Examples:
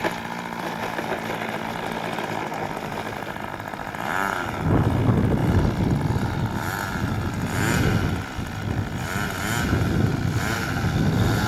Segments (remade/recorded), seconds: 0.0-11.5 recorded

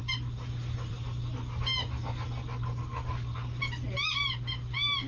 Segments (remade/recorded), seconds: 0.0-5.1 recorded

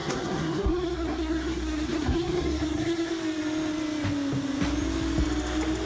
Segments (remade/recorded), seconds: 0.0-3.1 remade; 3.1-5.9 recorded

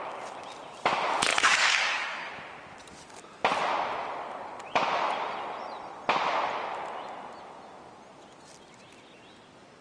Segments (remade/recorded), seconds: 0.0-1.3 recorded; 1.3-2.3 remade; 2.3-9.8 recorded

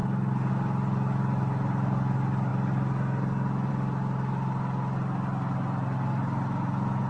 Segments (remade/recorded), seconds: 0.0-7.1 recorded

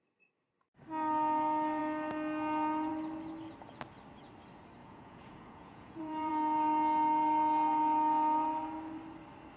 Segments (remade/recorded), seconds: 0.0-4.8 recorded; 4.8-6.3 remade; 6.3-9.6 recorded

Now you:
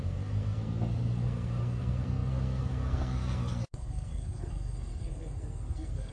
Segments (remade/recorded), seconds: 0.0-6.1 remade

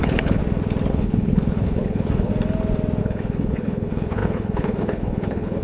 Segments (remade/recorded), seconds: 0.0-0.4 remade; 0.4-0.9 recorded; 0.9-2.3 remade; 2.3-3.0 recorded; 3.0-5.6 remade